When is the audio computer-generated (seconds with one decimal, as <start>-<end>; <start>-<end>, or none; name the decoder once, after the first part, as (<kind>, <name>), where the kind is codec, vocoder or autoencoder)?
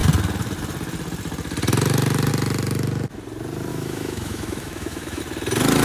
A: 3.7-5.2 (autoencoder, DAC-VAE)